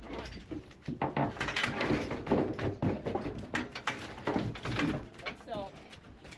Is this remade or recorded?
recorded